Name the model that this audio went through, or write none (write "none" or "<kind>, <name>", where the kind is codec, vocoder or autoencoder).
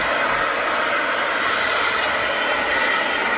none